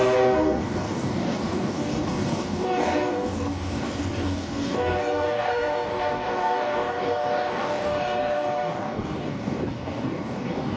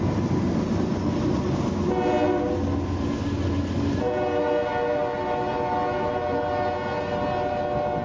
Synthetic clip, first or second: first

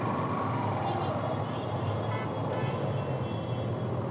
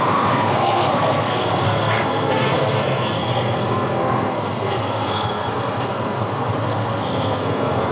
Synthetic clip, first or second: second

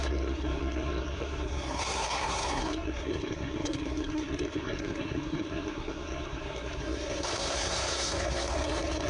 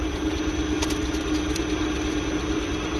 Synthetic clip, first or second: first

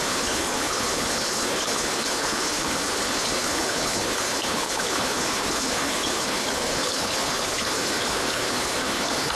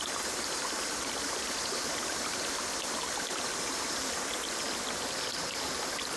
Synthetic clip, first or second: first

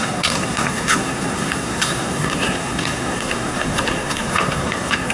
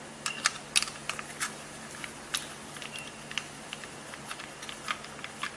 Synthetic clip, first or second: first